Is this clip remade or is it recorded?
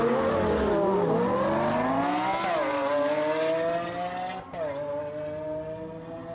recorded